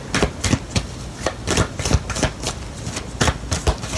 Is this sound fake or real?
real